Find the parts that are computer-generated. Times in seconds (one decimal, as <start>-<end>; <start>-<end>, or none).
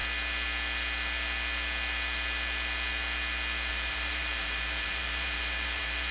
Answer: 3.7-6.1